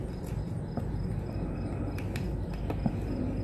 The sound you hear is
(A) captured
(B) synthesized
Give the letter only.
A